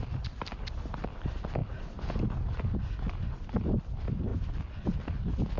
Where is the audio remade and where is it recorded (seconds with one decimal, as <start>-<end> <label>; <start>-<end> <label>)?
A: 0.0-5.6 recorded